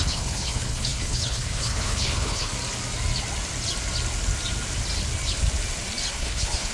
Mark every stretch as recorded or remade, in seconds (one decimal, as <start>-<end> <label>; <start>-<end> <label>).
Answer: 0.0-2.5 remade; 2.5-6.1 recorded; 6.1-6.7 remade

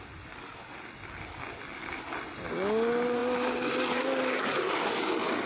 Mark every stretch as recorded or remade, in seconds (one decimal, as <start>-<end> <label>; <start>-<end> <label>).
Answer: 0.0-5.5 recorded